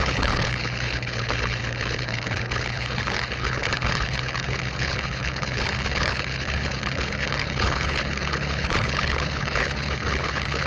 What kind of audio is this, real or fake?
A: fake